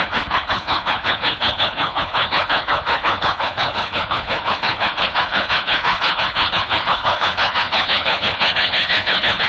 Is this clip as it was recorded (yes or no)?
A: no